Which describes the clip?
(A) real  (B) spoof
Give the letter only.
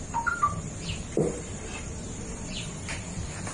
B